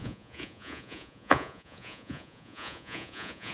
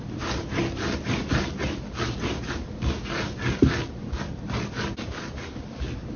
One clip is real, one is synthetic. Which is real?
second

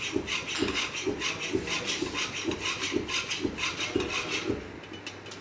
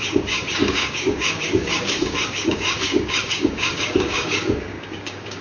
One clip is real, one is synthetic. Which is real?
first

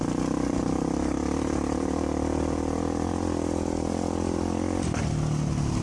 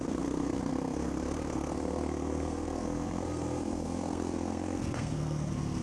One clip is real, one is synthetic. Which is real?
first